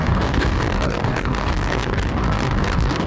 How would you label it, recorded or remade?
remade